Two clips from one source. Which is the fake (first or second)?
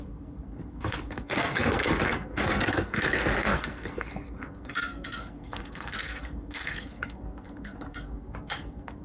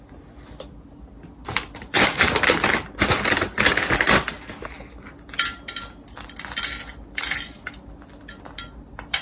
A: first